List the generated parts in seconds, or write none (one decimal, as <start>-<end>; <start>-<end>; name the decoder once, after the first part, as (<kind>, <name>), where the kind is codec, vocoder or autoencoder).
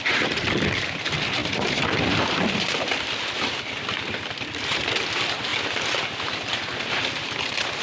1.4-3.9 (vocoder, BigVGAN v2)